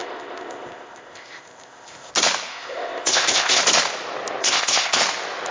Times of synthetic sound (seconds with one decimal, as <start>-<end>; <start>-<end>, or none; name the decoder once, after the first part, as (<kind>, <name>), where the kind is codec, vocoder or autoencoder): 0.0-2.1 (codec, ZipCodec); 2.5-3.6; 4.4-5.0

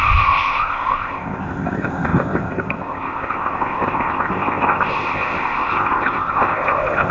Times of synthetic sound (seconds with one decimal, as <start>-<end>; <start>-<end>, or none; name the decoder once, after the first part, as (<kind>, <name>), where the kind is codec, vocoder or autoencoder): 0.0-7.1 (codec, ZipCodec)

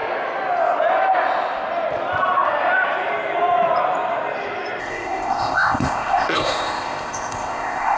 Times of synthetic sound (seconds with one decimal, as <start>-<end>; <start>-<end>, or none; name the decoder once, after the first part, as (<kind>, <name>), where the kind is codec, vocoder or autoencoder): 4.8-8.0 (codec, ZipCodec)

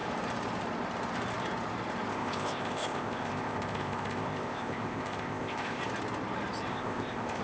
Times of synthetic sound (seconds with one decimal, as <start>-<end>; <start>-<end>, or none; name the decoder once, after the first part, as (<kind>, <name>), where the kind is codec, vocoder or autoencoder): 2.1-5.8 (codec, ZipCodec); 6.7-7.4

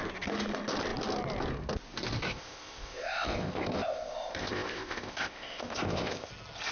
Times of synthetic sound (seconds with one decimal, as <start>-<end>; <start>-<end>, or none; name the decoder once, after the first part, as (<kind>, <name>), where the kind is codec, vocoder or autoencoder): 2.3-6.3 (codec, ZipCodec)

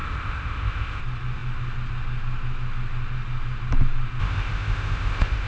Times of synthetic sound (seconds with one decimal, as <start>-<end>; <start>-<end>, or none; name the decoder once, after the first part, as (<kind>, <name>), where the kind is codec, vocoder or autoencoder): 0.0-1.0 (codec, ZipCodec); 4.2-5.5

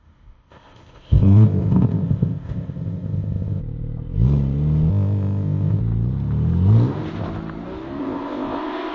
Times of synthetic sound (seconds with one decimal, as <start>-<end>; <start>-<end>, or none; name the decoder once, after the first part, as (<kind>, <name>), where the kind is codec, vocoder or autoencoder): 0.0-3.6 (codec, ZipCodec); 4.9-5.8; 8.0-8.9